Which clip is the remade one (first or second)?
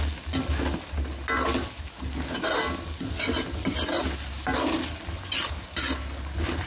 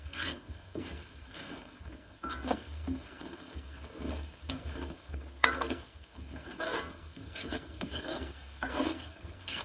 second